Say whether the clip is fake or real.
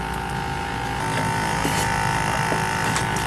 real